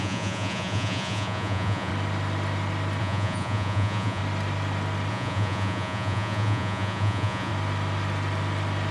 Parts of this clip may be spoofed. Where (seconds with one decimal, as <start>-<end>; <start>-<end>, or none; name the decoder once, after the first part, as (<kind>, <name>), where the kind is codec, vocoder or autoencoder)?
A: 0.0-1.9 (vocoder, Vocos); 3.0-4.2; 5.1-7.5